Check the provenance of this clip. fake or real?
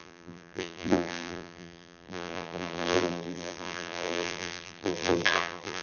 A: fake